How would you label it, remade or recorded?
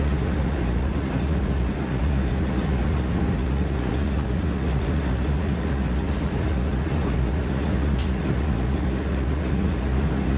remade